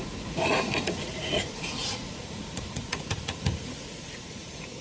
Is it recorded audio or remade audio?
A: remade